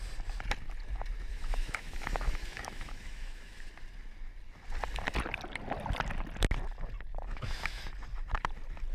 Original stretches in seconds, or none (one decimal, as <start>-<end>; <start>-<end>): 0.0-1.3; 3.7-7.1; 7.8-8.9